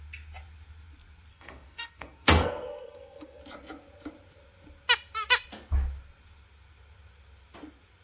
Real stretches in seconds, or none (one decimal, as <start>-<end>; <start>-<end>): 0.0-1.3; 3.4-8.0